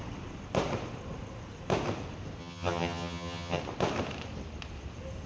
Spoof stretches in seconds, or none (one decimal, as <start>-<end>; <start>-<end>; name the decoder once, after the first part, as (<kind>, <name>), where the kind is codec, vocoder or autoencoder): 2.4-3.6 (vocoder, HiFi-GAN)